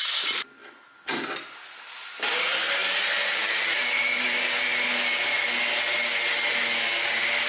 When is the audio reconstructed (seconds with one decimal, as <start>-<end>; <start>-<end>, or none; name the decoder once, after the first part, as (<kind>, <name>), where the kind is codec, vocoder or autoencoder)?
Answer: 2.8-7.5 (vocoder, BigVGAN v2)